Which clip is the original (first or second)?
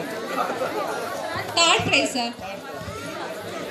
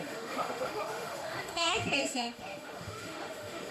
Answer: first